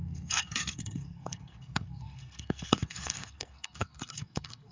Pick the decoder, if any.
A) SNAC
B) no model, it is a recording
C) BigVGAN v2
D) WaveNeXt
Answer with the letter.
A